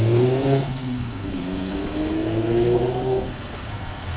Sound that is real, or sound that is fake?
fake